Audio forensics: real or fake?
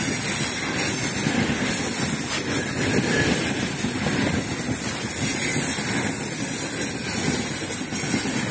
real